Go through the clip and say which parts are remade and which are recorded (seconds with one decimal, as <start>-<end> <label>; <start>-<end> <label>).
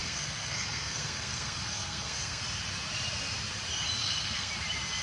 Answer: 0.0-2.4 remade; 2.4-4.0 recorded; 4.0-4.5 remade; 4.5-5.0 recorded